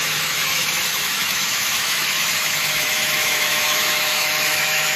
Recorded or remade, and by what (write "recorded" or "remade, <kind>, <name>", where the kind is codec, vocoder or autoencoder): remade, autoencoder, DAC-VAE